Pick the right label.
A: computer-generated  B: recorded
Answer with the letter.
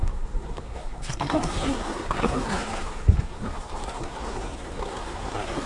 A